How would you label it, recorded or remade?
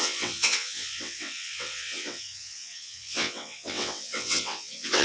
remade